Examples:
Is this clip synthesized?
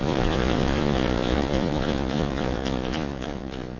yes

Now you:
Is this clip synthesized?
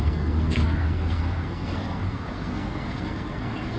yes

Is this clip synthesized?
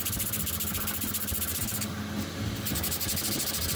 no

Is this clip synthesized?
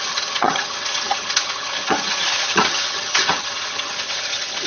yes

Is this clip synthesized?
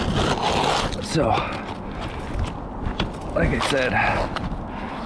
no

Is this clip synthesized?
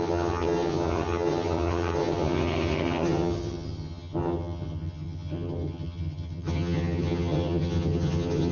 yes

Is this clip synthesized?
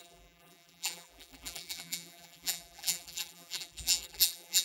yes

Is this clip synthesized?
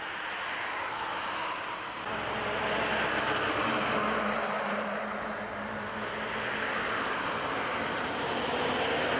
no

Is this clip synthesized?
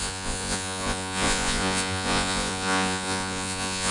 yes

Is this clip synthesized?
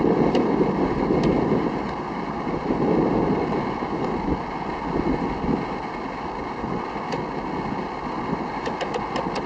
no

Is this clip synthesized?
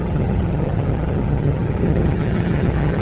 yes